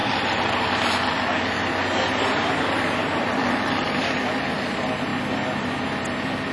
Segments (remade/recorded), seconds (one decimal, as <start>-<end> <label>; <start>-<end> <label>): 0.0-6.5 recorded